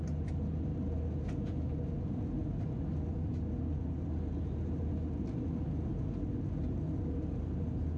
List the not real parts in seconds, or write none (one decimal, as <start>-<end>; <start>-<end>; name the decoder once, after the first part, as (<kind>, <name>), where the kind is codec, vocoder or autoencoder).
none